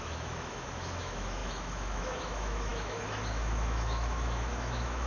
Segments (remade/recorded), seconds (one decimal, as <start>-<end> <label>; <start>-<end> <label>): 0.0-5.1 remade